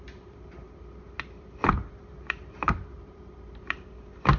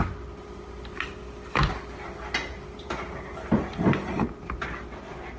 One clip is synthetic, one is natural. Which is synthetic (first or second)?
first